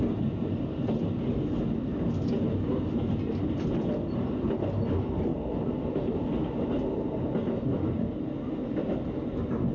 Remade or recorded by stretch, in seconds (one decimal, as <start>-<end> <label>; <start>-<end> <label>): 0.0-9.7 recorded